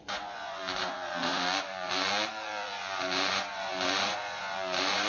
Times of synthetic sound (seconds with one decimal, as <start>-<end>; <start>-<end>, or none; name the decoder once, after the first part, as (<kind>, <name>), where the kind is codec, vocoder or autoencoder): 0.0-5.1 (vocoder, Vocos)